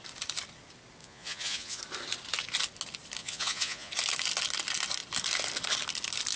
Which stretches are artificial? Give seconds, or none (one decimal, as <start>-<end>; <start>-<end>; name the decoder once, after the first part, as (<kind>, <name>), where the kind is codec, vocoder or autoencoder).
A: 1.0-1.8 (vocoder, Vocos); 3.2-3.9